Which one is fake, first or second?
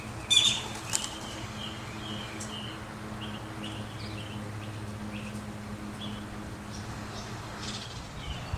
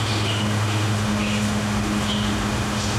second